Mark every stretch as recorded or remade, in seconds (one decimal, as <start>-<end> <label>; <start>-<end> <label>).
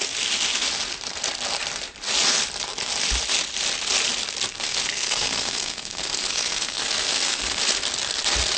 0.0-4.5 recorded; 4.5-7.6 remade; 7.6-8.6 recorded